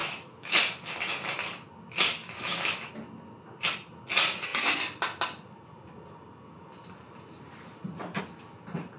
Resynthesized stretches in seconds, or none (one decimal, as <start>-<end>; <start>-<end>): 0.0-0.6; 2.2-2.9